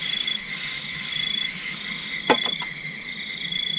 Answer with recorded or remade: recorded